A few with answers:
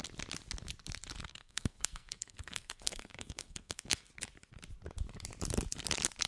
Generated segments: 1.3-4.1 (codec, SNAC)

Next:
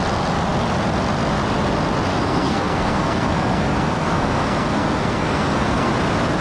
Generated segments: 2.1-5.9 (codec, SNAC)

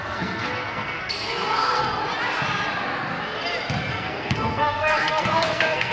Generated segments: 0.0-2.0 (codec, SNAC); 3.9-5.9

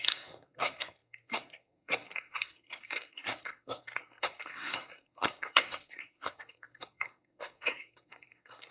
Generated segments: 0.0-8.7 (codec, SNAC)

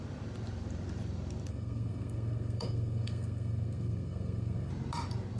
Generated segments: 1.5-4.7 (codec, SNAC)

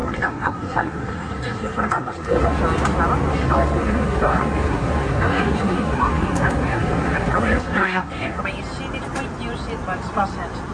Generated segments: 0.0-2.6 (codec, SNAC); 3.3-8.4